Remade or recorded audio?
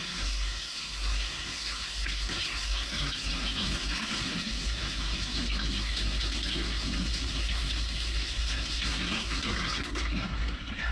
remade